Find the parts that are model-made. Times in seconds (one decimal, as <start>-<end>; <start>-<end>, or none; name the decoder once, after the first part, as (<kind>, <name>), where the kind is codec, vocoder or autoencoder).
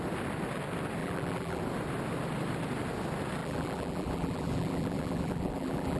1.0-1.6 (vocoder, BigVGAN v2); 3.4-6.0